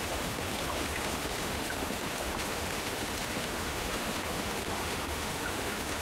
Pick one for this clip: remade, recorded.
remade